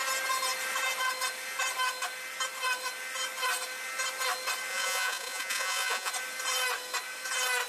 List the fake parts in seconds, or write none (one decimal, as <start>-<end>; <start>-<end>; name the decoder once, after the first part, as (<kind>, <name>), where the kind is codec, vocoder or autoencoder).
4.7-6.1 (vocoder, Vocos)